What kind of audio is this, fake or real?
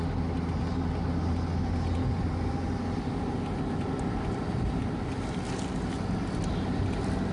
real